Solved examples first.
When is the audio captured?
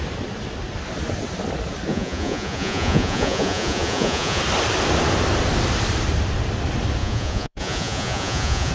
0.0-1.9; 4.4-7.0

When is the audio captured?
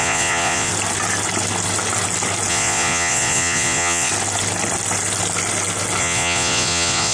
0.7-2.5; 4.1-6.0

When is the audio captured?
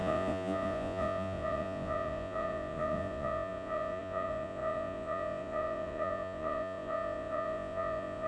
none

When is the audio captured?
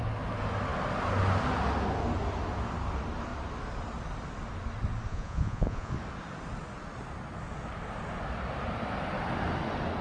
0.0-5.1; 5.9-10.0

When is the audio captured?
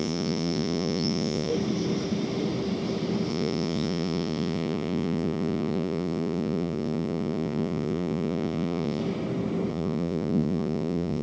1.5-3.3; 9.0-9.7